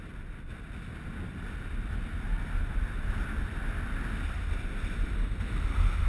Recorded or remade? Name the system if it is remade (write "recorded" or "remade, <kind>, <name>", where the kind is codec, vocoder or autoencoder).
recorded